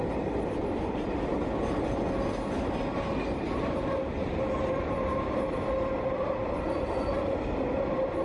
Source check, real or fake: real